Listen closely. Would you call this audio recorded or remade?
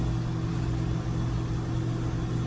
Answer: recorded